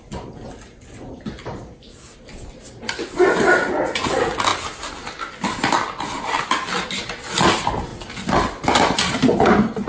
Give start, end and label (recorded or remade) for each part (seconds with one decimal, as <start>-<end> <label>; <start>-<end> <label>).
0.0-9.9 recorded